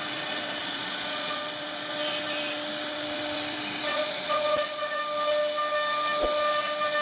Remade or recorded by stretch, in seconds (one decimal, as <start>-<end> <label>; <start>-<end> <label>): 0.0-0.6 recorded; 0.6-1.4 remade; 1.4-3.9 recorded; 3.9-5.0 remade; 5.0-7.0 recorded